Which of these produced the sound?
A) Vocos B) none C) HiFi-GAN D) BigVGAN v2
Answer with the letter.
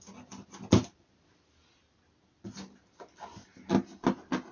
B